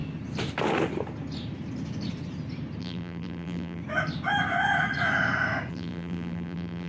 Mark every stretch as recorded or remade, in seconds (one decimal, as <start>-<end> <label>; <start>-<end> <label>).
0.0-2.8 recorded; 2.8-3.8 remade; 3.8-5.7 recorded; 5.7-6.9 remade